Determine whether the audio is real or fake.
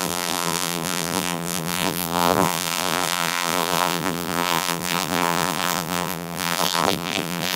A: fake